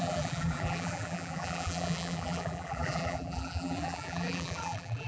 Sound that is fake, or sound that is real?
fake